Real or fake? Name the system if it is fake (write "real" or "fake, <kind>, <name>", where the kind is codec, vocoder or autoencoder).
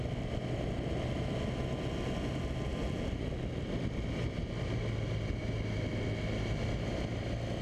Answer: real